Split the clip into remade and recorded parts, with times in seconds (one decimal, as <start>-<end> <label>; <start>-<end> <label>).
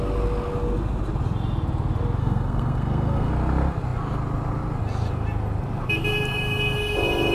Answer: 0.0-2.2 recorded; 2.2-3.3 remade; 3.3-7.3 recorded